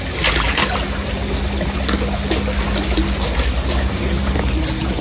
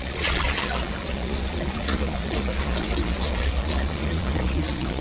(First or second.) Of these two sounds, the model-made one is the second